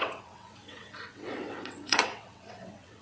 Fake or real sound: fake